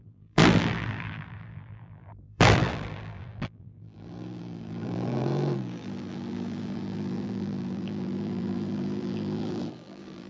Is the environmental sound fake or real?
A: fake